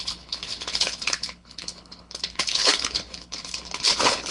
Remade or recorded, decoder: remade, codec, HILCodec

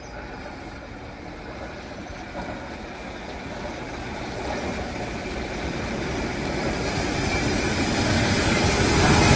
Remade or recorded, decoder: recorded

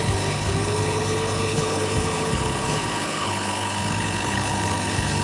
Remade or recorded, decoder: remade, codec, HILCodec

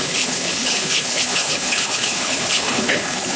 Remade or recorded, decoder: remade, codec, HILCodec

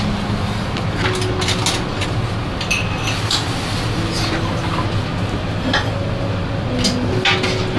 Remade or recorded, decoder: recorded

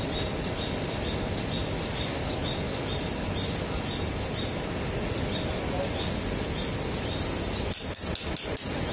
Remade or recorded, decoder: recorded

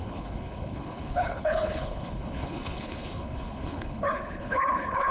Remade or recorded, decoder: remade, codec, HILCodec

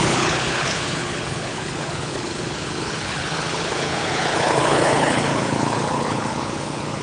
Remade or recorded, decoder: remade, codec, HILCodec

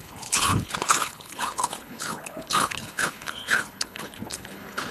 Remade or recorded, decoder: remade, codec, HILCodec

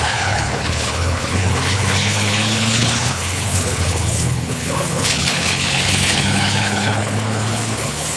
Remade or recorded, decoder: remade, codec, HILCodec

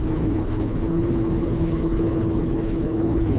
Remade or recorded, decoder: remade, codec, HILCodec